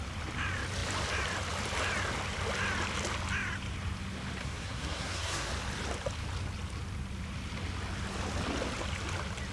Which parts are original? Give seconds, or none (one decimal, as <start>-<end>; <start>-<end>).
0.0-4.4; 5.5-9.5